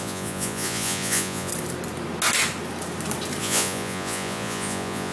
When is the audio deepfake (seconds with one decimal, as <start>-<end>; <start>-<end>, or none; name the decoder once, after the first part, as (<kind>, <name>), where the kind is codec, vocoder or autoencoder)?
0.0-1.5 (vocoder, Vocos); 3.4-5.1